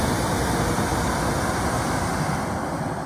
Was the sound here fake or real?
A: real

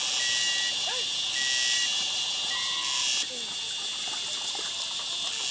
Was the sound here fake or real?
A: real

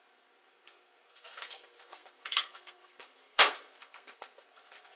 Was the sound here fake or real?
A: fake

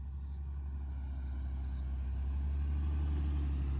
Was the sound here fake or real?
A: real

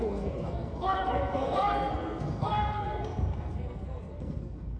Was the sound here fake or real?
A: fake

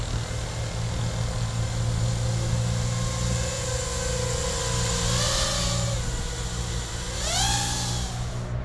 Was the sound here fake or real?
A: real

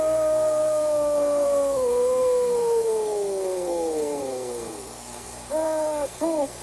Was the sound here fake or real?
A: fake